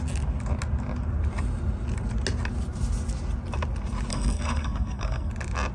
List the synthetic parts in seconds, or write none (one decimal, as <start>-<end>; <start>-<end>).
4.1-5.3